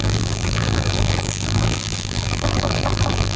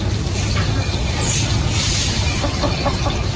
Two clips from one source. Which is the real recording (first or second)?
second